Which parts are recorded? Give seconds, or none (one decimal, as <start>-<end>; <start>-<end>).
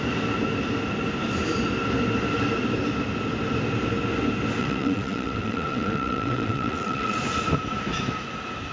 0.0-4.6; 7.2-8.7